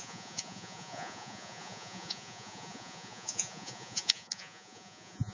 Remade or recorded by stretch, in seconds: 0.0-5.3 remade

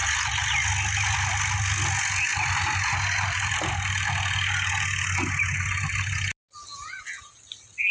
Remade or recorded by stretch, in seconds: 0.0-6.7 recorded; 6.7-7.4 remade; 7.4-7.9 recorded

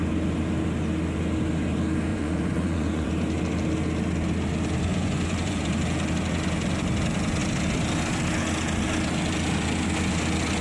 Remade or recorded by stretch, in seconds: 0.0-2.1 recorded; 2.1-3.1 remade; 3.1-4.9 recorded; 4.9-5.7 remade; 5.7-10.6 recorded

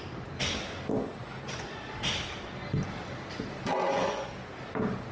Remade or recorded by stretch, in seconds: 0.0-1.2 recorded; 1.2-1.8 remade; 1.8-3.8 recorded; 3.8-4.3 remade; 4.3-5.1 recorded

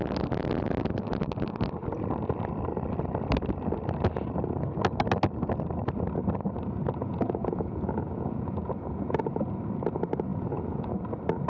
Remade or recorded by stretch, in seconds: 0.0-7.0 recorded; 7.0-9.2 remade; 9.2-10.3 recorded; 10.3-10.9 remade; 10.9-11.5 recorded

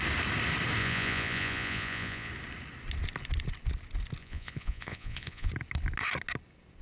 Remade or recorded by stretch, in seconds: 0.0-0.8 recorded; 0.8-2.3 remade; 2.3-4.2 recorded; 4.2-5.5 remade; 5.5-6.8 recorded

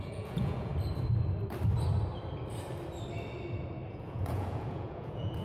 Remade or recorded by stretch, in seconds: 0.0-0.7 remade; 0.7-3.9 recorded; 3.9-5.4 remade